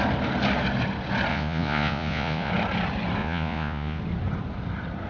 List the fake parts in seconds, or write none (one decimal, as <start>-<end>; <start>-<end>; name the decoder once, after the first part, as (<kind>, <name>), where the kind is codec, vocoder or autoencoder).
1.3-2.5 (vocoder, Vocos); 3.2-4.0